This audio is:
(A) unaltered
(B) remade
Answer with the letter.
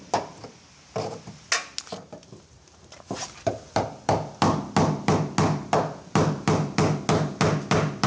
A